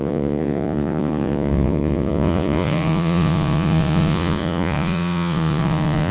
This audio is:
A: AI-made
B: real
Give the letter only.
A